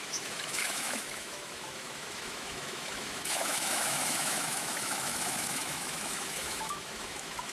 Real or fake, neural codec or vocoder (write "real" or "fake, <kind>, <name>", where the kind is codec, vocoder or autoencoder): fake, autoencoder, DAC-VAE